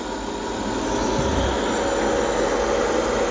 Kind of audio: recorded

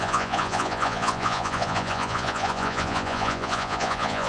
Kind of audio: remade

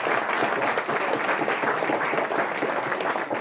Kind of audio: recorded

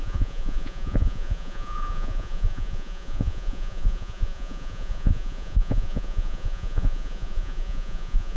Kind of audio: remade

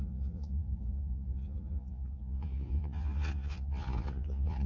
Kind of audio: remade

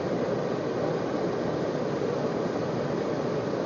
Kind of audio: recorded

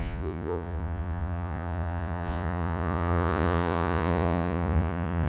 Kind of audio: remade